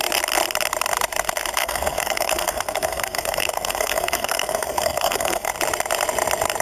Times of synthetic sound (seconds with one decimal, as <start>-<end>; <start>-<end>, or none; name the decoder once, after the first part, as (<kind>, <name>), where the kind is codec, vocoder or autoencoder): 1.6-5.5 (codec, SNAC)

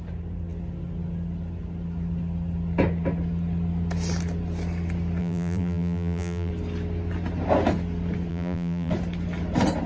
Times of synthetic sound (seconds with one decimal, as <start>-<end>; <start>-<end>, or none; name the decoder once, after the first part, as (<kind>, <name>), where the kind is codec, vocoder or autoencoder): 5.2-6.5 (vocoder, BigVGAN v2); 8.3-8.9

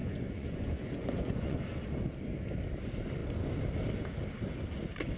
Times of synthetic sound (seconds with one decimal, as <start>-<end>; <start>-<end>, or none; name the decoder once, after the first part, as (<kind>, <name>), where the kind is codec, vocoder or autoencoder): 0.0-1.6 (vocoder, Vocos)